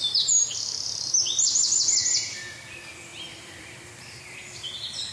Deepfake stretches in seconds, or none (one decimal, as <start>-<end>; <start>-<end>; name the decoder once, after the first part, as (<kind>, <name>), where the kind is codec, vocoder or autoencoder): 3.1-5.1 (vocoder, BigVGAN v2)